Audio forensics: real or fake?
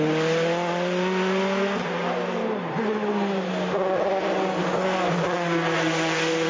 real